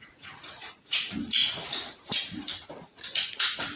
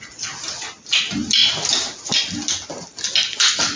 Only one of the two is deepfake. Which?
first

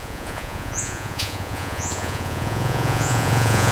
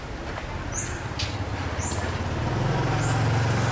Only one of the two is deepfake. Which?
first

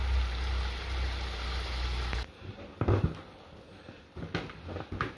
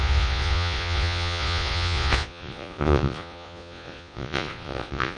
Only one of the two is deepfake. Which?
second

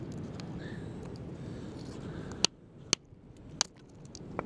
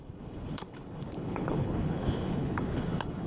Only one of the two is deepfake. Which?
second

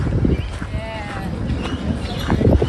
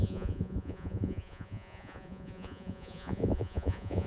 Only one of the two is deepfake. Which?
second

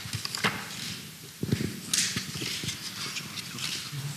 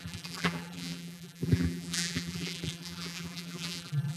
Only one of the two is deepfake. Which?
second